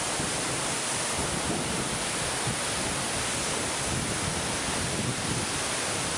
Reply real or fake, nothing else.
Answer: real